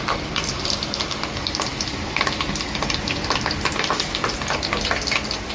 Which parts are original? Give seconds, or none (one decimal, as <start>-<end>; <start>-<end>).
0.0-5.5